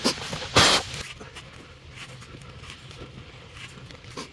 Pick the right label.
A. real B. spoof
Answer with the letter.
A